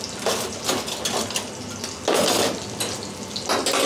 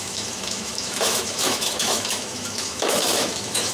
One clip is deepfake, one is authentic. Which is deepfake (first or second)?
second